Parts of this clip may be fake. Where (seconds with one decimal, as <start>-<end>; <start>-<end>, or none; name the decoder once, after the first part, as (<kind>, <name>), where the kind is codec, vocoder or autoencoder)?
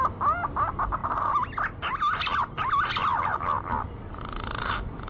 none